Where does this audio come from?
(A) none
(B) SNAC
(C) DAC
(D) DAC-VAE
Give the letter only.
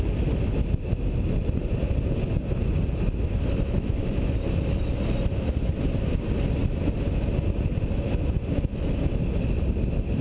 A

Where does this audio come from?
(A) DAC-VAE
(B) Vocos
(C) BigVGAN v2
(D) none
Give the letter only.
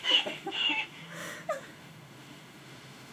A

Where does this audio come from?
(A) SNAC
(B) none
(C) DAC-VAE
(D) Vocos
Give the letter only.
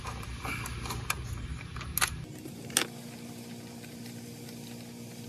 B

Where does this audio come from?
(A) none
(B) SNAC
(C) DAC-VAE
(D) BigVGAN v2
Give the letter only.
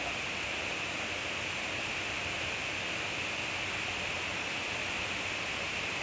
A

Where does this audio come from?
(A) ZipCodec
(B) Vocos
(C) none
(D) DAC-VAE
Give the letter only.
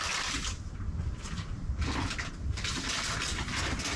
C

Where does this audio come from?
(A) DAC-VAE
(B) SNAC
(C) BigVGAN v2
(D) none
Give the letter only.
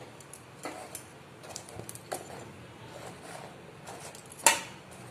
D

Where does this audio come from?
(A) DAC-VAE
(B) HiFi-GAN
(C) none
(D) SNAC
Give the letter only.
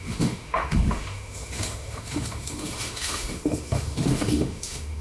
A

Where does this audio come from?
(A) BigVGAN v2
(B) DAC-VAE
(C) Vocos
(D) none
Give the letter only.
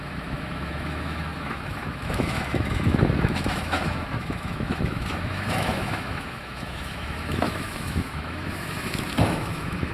B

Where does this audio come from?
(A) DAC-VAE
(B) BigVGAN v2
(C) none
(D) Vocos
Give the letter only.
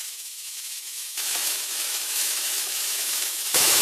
A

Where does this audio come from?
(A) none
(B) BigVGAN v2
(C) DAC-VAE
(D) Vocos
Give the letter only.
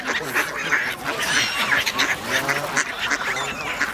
A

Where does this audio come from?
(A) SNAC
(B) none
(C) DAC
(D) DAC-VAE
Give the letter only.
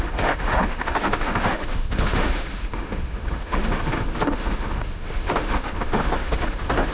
D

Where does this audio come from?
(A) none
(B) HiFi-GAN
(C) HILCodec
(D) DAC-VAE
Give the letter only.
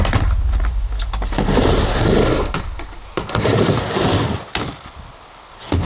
A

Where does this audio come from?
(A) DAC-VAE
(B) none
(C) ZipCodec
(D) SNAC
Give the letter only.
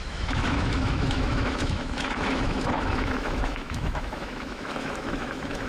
A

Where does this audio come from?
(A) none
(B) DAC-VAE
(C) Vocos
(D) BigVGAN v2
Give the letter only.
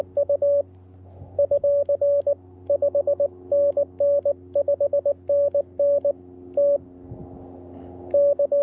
A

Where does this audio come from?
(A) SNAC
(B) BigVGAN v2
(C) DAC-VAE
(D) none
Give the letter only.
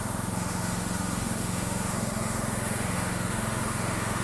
C